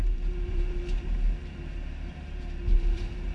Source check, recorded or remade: remade